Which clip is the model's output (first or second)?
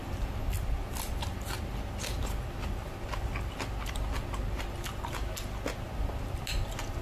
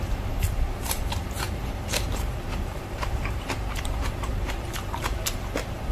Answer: second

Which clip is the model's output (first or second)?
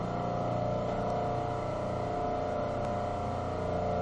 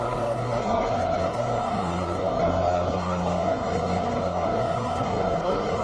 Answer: second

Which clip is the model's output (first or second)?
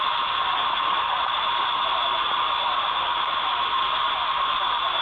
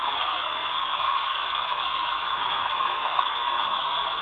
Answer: second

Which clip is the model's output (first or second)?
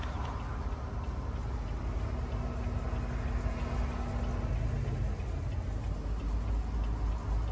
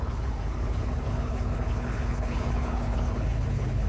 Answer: second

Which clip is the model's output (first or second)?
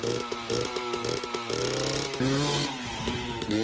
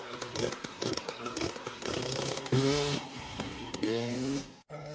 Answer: second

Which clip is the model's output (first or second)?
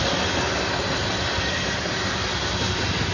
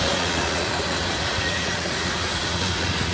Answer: second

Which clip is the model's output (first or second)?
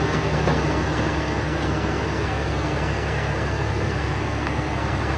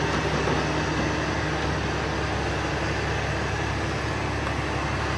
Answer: first